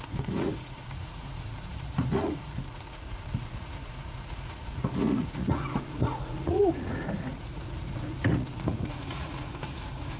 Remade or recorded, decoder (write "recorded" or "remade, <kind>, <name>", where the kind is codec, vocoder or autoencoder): remade, vocoder, Vocos